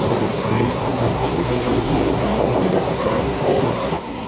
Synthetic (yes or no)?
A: yes